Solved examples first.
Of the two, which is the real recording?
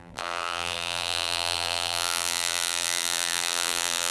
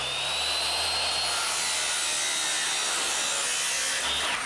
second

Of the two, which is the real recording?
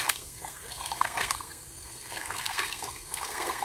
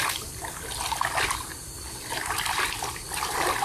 second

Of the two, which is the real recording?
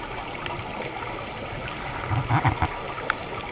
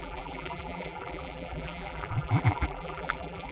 first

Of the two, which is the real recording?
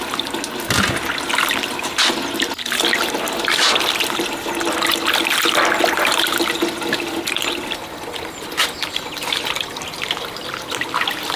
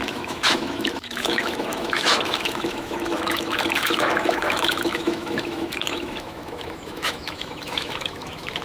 first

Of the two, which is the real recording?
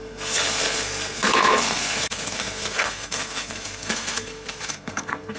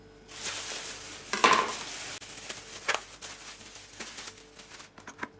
second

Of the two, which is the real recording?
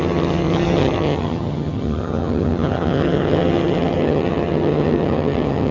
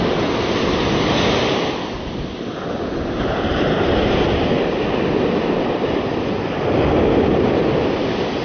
second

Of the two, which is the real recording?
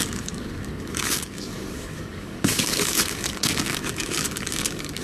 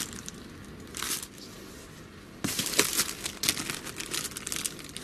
second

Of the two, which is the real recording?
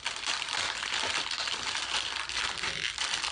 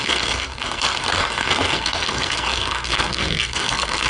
first